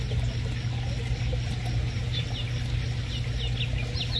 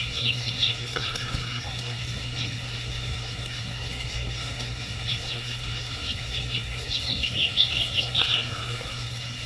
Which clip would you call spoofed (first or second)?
second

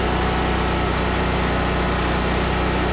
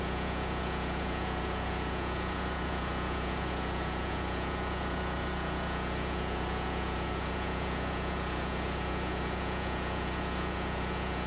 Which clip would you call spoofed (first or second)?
second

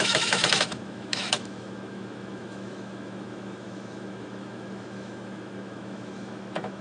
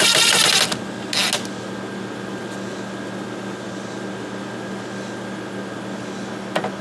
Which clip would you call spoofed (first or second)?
first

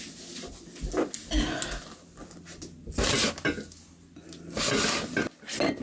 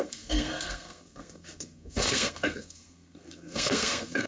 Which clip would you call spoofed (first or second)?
second